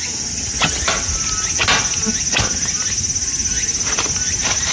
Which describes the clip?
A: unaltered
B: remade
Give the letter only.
A